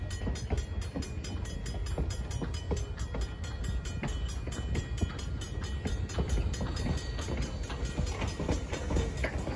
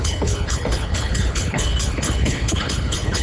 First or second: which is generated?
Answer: second